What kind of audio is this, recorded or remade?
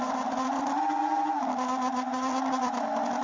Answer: recorded